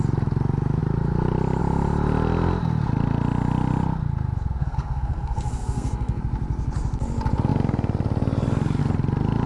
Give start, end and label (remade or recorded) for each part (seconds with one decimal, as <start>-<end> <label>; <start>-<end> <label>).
0.0-4.6 recorded; 4.6-6.2 remade; 6.2-9.5 recorded